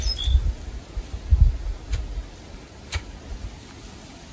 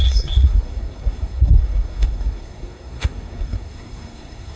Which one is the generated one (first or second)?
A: second